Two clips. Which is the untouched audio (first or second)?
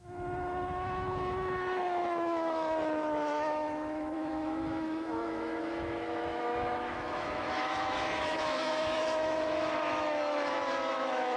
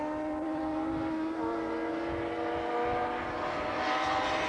second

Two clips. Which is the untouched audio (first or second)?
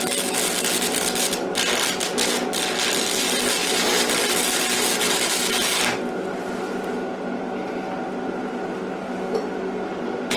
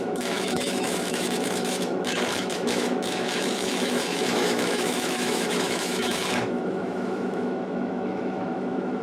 first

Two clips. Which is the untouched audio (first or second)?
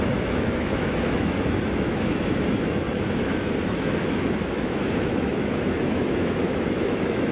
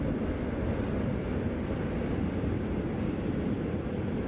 second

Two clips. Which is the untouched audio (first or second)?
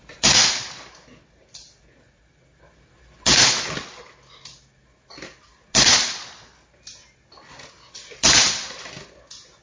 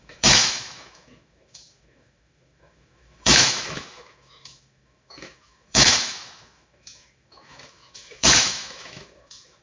first